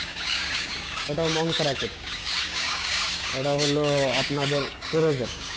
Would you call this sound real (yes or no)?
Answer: no